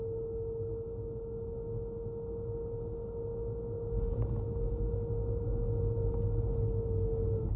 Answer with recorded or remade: recorded